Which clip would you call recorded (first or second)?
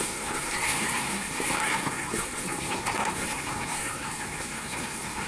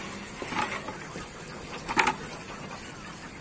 second